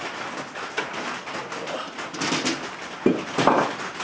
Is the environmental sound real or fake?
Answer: real